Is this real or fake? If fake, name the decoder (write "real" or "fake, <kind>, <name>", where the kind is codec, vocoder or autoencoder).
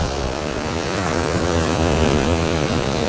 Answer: fake, vocoder, Vocos